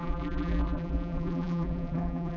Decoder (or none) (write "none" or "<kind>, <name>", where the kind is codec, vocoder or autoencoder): vocoder, BigVGAN v2